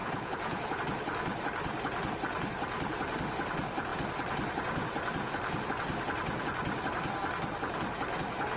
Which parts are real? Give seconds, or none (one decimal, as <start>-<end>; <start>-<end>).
0.8-8.6